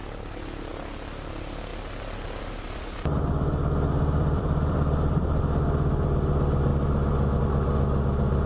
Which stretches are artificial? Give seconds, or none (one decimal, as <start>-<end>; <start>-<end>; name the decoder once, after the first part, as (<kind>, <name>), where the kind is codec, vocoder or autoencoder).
1.7-5.4 (vocoder, BigVGAN v2)